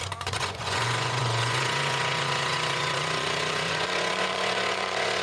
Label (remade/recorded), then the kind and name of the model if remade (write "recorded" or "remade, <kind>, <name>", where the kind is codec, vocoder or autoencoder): remade, vocoder, Vocos